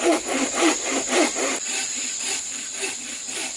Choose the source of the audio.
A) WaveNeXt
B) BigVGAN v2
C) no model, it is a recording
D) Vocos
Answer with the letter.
C